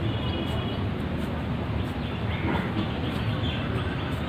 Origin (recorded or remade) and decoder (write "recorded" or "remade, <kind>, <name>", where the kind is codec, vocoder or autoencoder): recorded